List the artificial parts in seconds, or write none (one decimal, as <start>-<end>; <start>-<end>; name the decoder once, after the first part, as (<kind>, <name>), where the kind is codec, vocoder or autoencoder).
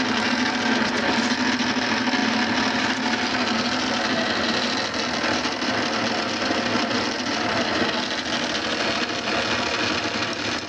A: none